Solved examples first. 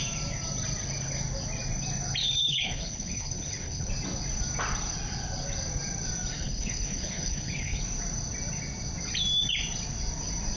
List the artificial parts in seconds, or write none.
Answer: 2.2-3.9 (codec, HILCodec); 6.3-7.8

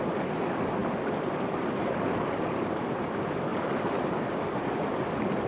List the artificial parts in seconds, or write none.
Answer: none

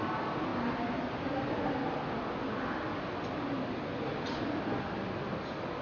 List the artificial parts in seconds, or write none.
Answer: none

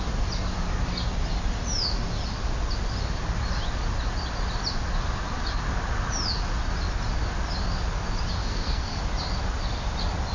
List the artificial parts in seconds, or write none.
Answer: 8.4-9.0 (codec, SNAC)

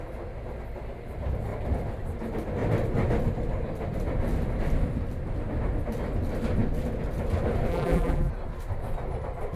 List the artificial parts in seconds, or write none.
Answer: 7.7-8.3 (vocoder, BigVGAN v2)

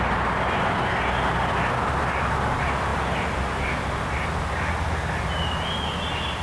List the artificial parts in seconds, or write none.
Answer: none

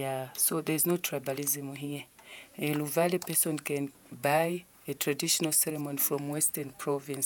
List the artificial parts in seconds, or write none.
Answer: 0.0-7.3 (vocoder, Vocos)

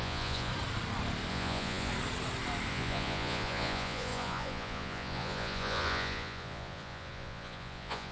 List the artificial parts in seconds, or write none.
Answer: 0.0-0.5 (vocoder, Vocos); 1.3-1.9; 2.7-8.1